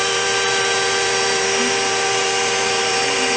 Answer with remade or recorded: remade